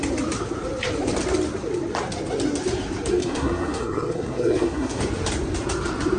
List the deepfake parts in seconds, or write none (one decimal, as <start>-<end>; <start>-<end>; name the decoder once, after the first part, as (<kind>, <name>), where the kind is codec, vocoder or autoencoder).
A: 3.2-5.0 (codec, SNAC)